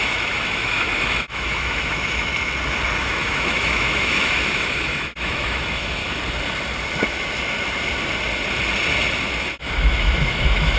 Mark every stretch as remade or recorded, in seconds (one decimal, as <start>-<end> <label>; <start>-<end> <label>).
0.0-2.3 remade; 2.3-3.0 recorded; 3.0-6.0 remade; 6.0-9.5 recorded; 9.5-10.8 remade

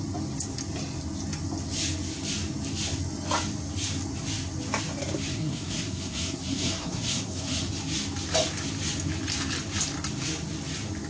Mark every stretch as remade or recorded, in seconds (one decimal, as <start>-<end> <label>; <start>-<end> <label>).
0.0-5.3 recorded; 5.3-7.7 remade; 7.7-11.1 recorded

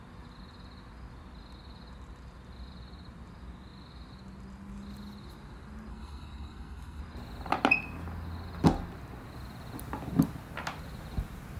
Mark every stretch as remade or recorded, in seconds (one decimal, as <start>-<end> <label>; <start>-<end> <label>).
0.0-5.9 recorded; 5.9-7.0 remade; 7.0-11.6 recorded

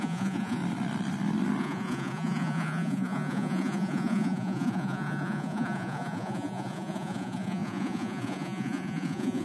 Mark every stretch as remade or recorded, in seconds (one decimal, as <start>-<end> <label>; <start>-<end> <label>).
0.0-0.6 remade; 0.6-1.6 recorded; 1.6-9.4 remade

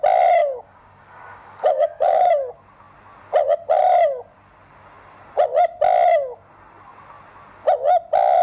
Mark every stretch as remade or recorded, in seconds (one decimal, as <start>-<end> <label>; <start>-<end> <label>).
0.0-0.4 recorded; 0.4-2.3 remade; 2.3-8.4 recorded

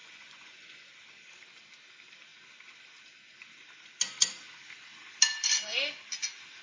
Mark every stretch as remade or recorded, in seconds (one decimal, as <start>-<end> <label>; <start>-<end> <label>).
0.0-0.8 remade; 0.8-6.6 recorded

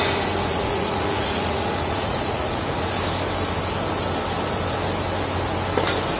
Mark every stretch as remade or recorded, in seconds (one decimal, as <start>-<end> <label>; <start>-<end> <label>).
0.0-0.5 recorded; 0.5-2.8 remade; 2.8-6.2 recorded

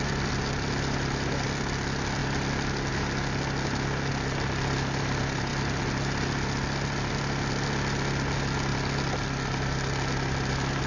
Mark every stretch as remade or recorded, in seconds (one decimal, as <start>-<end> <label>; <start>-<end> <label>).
0.0-10.9 recorded